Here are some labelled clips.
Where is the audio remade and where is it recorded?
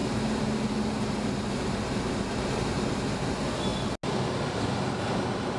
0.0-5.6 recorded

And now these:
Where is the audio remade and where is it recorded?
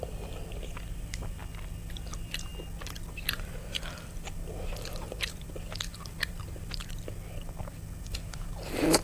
0.0-1.4 remade; 1.4-1.9 recorded; 1.9-2.5 remade; 2.5-3.1 recorded; 3.1-6.8 remade; 6.8-8.0 recorded; 8.0-9.0 remade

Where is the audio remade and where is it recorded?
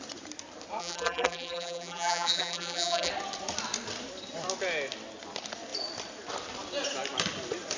0.0-0.8 recorded; 0.8-3.1 remade; 3.1-7.8 recorded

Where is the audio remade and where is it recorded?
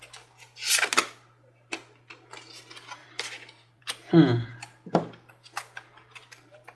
0.0-3.0 recorded; 3.0-3.8 remade; 3.8-6.7 recorded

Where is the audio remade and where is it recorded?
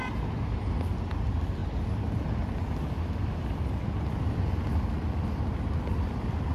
0.0-6.5 recorded